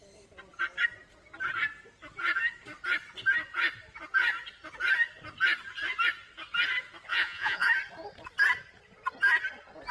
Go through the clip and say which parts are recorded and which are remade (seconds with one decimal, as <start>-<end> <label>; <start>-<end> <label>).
0.0-7.1 recorded; 7.1-7.7 remade; 7.7-9.9 recorded